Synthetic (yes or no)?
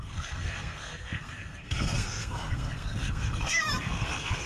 yes